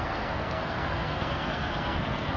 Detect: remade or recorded remade